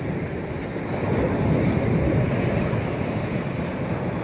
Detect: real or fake real